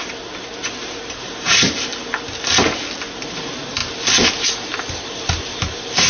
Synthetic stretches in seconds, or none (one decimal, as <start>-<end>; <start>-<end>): 0.0-1.9; 3.3-3.8; 5.1-6.1